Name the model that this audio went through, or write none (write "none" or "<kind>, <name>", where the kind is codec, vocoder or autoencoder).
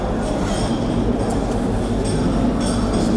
none